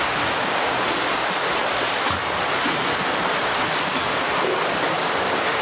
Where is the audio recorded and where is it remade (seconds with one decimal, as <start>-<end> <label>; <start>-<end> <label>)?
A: 0.0-5.6 recorded